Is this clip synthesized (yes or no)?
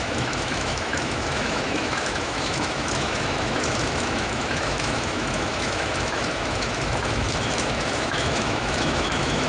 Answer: yes